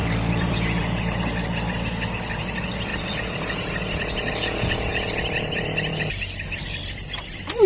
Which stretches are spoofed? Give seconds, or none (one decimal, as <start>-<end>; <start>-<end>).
0.0-0.8; 2.9-4.3; 4.9-7.7